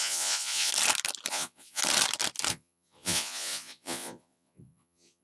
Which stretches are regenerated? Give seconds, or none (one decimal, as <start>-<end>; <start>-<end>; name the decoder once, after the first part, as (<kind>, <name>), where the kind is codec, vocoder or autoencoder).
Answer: 0.0-0.7 (vocoder, Vocos); 1.3-1.8; 2.5-5.2